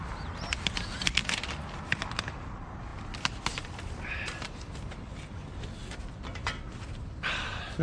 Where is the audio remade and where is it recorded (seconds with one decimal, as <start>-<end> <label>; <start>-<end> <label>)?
0.0-7.8 recorded